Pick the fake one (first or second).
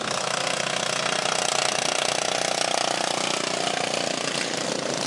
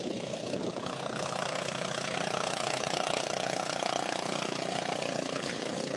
second